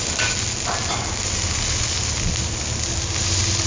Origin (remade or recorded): recorded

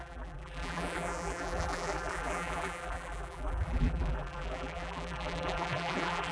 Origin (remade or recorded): remade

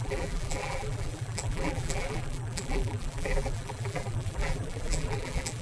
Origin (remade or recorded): remade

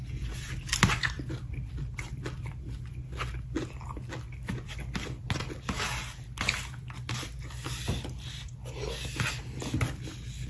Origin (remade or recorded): recorded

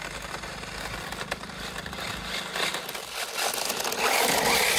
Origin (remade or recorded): recorded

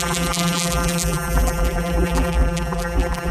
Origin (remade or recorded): remade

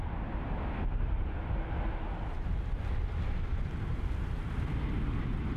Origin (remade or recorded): recorded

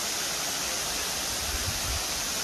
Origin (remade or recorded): recorded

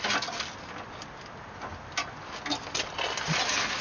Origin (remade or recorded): recorded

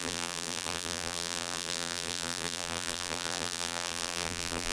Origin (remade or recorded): remade